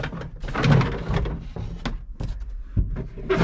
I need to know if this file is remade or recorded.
recorded